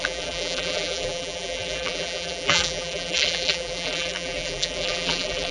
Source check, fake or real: fake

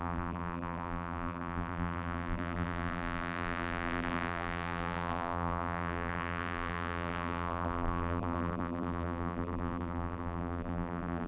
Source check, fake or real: fake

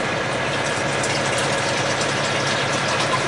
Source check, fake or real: fake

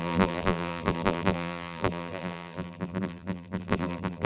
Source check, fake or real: fake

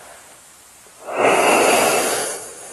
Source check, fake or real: real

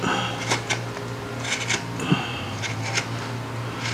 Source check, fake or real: real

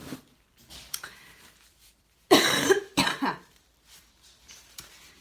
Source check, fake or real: fake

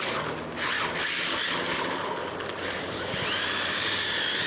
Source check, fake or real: real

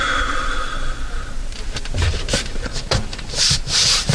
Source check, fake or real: fake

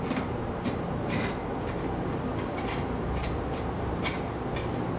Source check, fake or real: fake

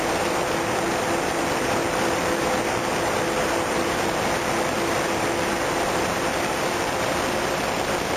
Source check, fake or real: fake